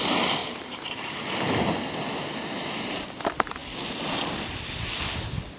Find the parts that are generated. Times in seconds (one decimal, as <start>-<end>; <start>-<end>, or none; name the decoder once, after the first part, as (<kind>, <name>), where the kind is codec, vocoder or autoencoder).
0.4-1.0 (vocoder, BigVGAN v2)